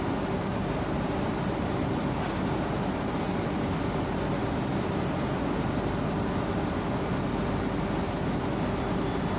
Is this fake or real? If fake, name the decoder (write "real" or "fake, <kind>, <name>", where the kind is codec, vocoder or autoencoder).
real